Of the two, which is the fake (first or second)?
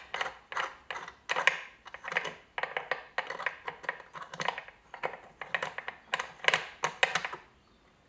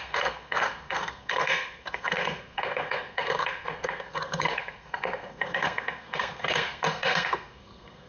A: second